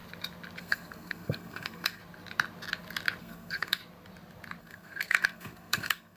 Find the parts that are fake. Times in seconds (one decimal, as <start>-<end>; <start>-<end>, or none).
0.6-2.0; 3.2-3.8; 4.6-6.2